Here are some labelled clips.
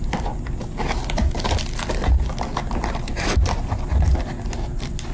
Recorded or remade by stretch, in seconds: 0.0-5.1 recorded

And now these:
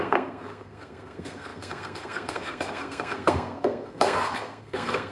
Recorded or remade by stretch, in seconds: 0.0-5.1 remade

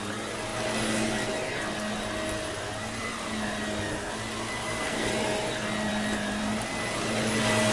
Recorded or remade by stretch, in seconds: 0.0-4.6 recorded; 4.6-5.1 remade; 5.1-7.7 recorded

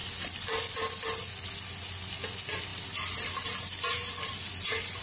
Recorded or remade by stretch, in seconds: 0.0-5.0 recorded

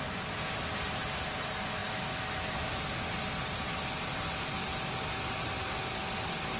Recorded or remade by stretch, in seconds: 0.0-6.6 recorded